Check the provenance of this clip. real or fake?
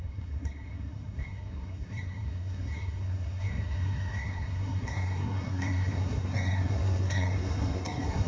fake